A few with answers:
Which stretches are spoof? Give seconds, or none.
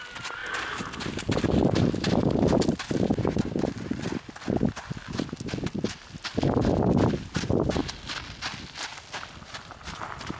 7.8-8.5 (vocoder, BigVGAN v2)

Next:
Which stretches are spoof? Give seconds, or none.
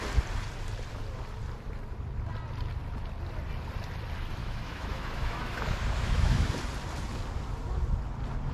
4.4-6.5 (autoencoder, DAC-VAE)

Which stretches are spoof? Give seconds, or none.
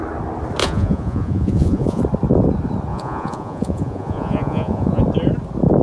0.6-2.0 (vocoder, Vocos); 2.9-5.0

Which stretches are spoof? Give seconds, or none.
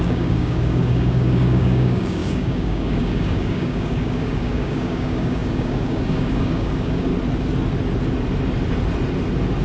0.0-7.1 (codec, DAC)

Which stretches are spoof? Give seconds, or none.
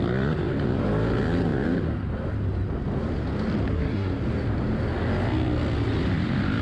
3.7-4.2 (codec, SNAC)